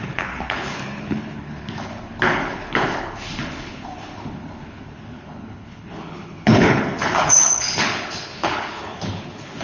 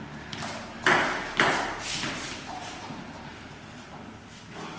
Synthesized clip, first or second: first